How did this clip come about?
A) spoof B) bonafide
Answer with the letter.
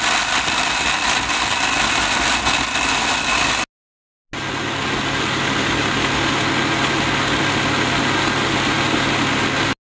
B